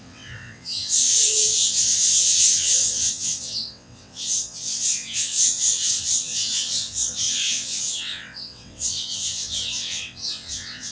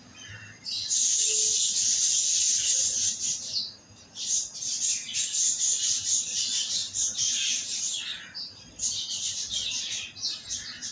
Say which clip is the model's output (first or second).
first